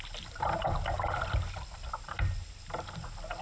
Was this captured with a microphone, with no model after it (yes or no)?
yes